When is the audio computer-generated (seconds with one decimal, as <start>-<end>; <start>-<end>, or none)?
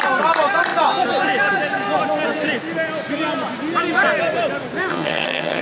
4.9-5.6